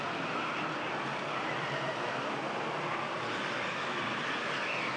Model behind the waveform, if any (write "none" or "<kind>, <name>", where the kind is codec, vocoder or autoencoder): vocoder, BigVGAN v2